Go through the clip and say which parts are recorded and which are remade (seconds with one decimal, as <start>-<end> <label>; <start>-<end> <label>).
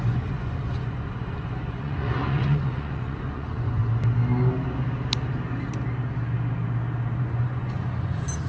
0.0-3.8 remade; 3.8-7.2 recorded; 7.2-8.5 remade